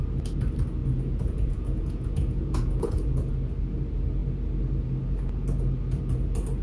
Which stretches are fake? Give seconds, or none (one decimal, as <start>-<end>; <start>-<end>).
0.8-3.3